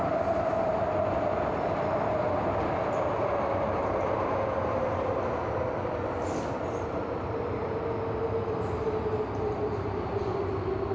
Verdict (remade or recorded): recorded